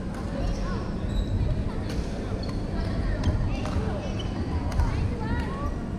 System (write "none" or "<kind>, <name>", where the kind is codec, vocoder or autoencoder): none